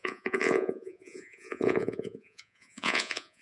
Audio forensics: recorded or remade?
remade